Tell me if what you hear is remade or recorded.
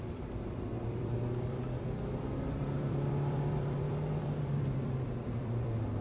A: remade